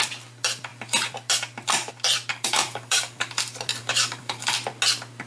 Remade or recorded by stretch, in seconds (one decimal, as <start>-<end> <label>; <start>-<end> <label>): 0.0-2.3 recorded; 2.3-3.3 remade; 3.3-3.8 recorded; 3.8-4.5 remade; 4.5-5.3 recorded

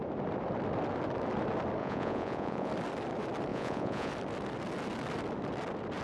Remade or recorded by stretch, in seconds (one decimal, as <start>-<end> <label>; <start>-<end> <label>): 0.0-1.8 recorded; 1.8-2.7 remade; 2.7-3.5 recorded; 3.5-4.1 remade; 4.1-6.0 recorded